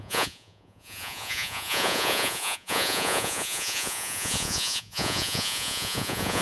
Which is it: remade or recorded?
remade